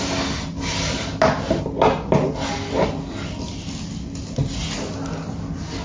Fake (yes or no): no